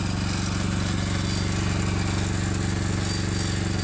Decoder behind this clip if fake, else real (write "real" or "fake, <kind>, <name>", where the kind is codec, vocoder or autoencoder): real